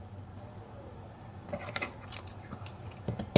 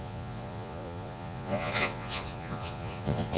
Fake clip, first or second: second